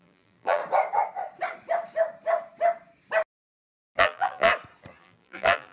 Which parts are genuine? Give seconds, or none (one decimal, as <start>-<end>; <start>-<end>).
0.6-4.0; 4.5-5.0